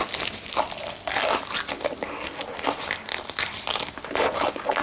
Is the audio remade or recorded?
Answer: recorded